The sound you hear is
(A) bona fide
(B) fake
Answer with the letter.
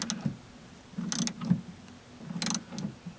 A